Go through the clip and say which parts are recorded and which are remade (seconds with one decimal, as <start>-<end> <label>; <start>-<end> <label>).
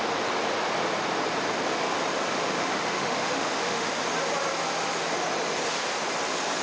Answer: 0.0-2.3 recorded; 2.3-4.0 remade; 4.0-6.6 recorded